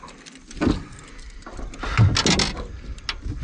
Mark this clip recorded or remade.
recorded